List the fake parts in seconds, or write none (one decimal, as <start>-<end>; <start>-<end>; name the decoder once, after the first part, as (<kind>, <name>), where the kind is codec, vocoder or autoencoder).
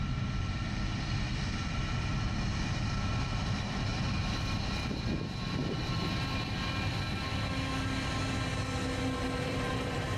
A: 0.0-3.9 (vocoder, BigVGAN v2); 4.8-5.6; 9.4-10.2